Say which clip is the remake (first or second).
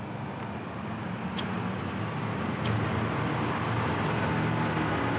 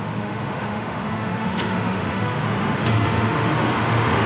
second